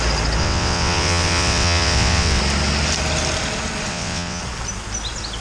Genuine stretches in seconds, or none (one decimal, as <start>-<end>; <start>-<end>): 0.0-0.4; 2.4-3.9; 4.4-5.4

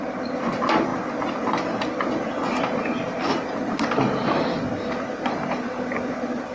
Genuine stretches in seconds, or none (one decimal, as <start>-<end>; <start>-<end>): 0.0-6.5

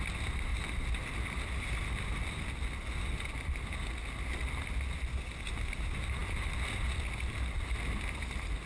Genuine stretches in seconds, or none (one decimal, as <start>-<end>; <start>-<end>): 0.0-8.7

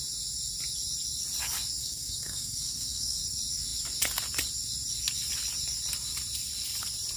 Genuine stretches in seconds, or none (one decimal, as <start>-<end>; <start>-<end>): 0.0-1.8; 3.2-7.2